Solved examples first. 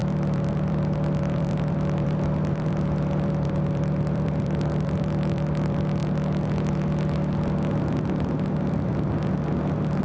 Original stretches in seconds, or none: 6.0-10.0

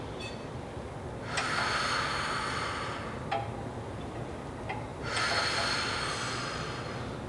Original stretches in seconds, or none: 0.0-7.3

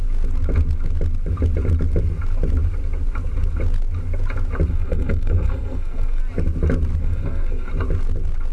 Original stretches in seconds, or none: 0.0-4.7; 6.2-7.0; 7.7-8.5

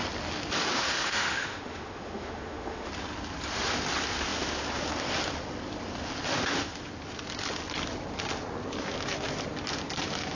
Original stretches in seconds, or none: 0.0-0.7; 2.9-10.4

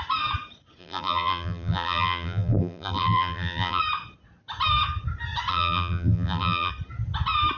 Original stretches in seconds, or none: 0.0-0.8; 3.8-5.5; 6.7-7.6

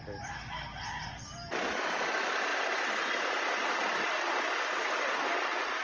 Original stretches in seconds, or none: 0.0-5.8

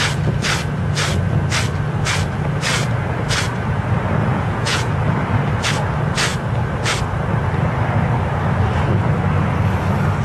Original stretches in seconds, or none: 0.0-4.2; 4.9-10.2